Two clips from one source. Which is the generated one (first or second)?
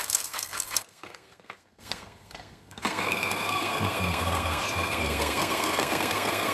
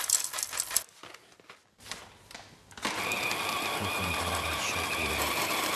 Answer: first